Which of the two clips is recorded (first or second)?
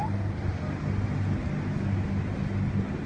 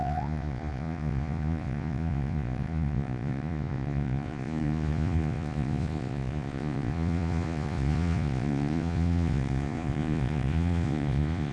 first